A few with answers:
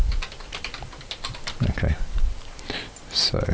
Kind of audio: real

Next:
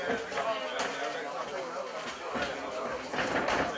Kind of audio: real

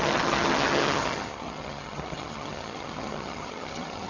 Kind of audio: fake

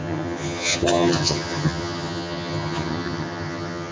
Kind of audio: fake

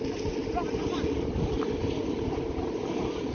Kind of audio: real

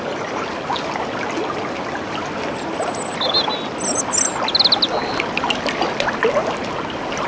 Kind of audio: real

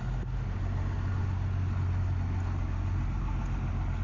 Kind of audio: real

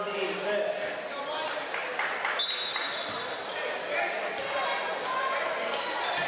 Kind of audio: real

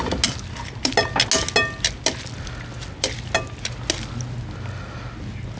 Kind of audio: real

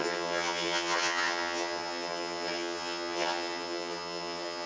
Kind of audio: fake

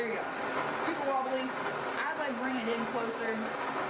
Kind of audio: real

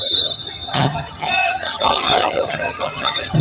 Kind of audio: fake